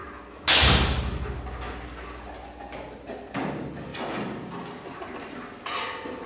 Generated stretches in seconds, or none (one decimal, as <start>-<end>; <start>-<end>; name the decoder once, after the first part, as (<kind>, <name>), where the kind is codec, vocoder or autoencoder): none